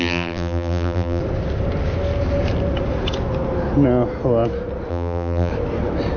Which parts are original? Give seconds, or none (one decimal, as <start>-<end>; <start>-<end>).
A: 1.2-4.9; 5.5-6.2